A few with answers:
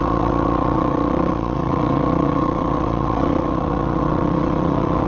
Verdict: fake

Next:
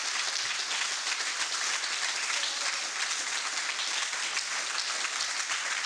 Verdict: real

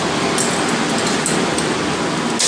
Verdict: real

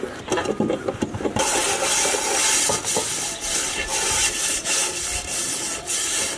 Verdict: real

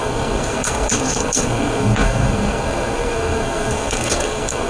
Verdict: fake